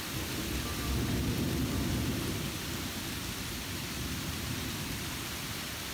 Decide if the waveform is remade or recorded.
remade